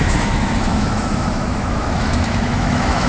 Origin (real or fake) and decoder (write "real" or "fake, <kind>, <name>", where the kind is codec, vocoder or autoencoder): fake, autoencoder, DAC-VAE